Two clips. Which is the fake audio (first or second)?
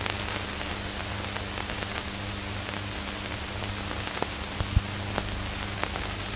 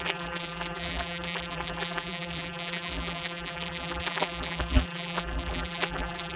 second